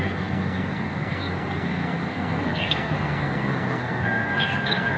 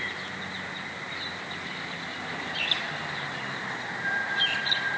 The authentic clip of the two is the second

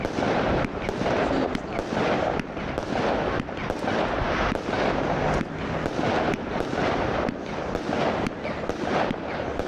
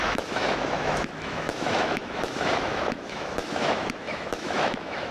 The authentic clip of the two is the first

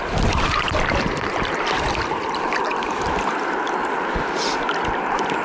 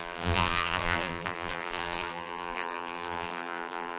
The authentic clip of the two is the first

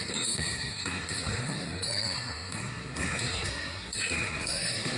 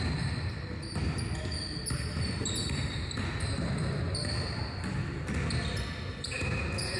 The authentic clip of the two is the second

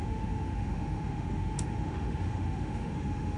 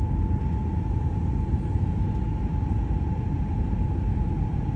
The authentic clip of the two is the second